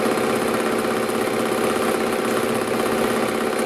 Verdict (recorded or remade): recorded